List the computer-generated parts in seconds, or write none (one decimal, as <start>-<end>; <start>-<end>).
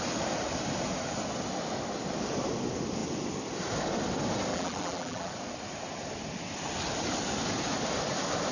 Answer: 4.5-5.3